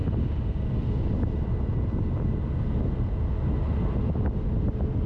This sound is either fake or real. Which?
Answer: real